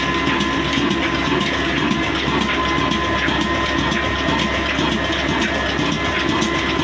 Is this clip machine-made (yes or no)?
no